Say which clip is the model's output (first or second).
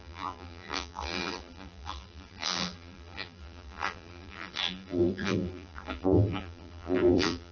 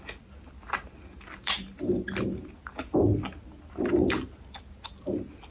first